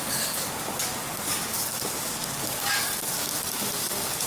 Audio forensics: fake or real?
fake